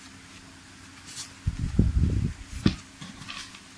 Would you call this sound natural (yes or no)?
yes